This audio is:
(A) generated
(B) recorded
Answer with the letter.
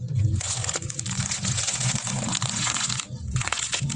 A